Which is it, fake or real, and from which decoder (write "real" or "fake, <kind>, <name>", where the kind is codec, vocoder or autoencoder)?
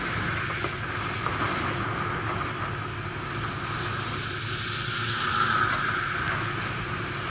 real